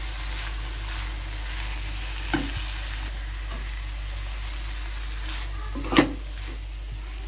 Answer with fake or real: real